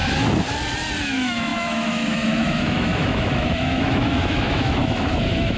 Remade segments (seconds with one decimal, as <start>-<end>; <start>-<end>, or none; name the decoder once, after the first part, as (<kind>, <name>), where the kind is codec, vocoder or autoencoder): 1.0-5.6 (autoencoder, DAC-VAE)